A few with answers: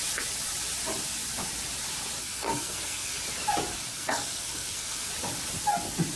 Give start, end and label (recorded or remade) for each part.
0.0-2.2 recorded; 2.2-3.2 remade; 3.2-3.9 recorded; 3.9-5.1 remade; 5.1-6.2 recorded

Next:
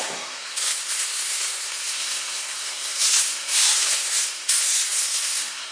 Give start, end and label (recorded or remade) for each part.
0.0-5.7 remade

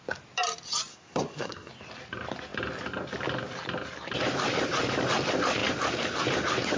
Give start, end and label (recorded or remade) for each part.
0.0-0.9 recorded; 0.9-1.7 remade; 1.7-6.8 recorded

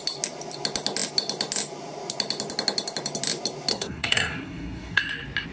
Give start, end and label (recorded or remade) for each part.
0.0-3.7 recorded; 3.7-5.0 remade; 5.0-5.5 recorded

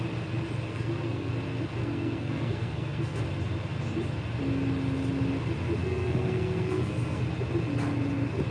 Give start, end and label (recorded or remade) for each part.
0.0-0.7 recorded; 0.7-1.3 remade; 1.3-1.8 recorded; 1.8-3.2 remade; 3.2-5.8 recorded; 5.8-7.2 remade; 7.2-8.5 recorded

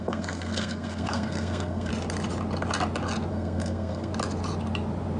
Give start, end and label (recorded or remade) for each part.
0.0-1.9 remade; 1.9-3.3 recorded; 3.3-4.1 remade; 4.1-5.2 recorded

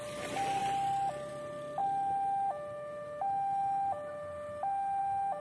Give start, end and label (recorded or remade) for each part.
0.0-5.4 recorded